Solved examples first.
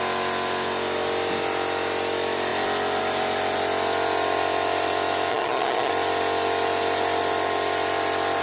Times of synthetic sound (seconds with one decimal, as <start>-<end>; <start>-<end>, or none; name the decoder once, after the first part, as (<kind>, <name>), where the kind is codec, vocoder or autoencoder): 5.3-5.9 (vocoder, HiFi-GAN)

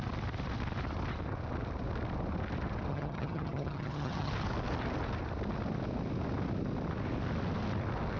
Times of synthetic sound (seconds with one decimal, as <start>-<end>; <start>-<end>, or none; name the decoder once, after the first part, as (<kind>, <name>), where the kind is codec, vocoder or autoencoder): 2.9-4.3 (vocoder, HiFi-GAN)

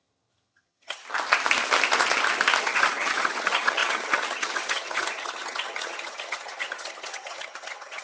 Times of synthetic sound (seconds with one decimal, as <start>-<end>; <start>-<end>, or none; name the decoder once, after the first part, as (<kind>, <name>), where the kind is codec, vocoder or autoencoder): 0.0-1.0 (vocoder, HiFi-GAN); 2.6-8.0

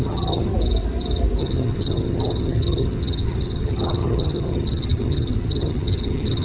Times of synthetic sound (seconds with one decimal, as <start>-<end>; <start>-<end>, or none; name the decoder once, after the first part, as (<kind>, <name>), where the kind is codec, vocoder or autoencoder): 0.0-0.5 (vocoder, HiFi-GAN); 1.4-6.4

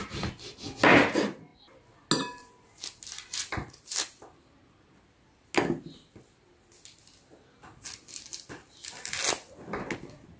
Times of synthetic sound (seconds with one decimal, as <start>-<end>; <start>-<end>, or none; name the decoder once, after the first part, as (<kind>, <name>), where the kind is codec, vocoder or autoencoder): none